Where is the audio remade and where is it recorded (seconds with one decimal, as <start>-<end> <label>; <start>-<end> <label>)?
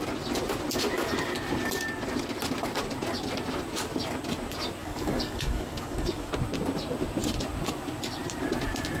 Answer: 0.0-4.8 recorded; 4.8-6.3 remade; 6.3-9.0 recorded